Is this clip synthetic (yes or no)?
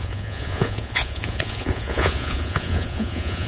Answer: yes